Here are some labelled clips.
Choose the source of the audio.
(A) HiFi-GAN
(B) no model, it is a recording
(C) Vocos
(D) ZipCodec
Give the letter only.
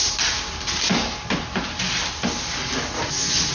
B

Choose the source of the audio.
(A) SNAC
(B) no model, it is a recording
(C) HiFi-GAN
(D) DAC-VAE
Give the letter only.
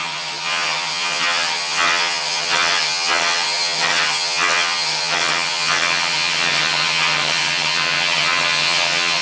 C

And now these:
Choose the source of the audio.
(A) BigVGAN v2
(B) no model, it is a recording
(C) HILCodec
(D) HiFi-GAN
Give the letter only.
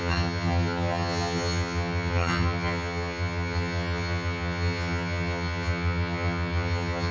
D